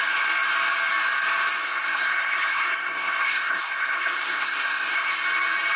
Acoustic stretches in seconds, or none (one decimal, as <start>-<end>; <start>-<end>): 0.0-1.6; 5.1-5.8